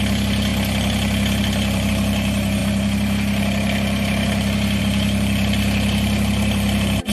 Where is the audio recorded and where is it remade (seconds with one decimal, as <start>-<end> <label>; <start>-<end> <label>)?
0.0-7.1 remade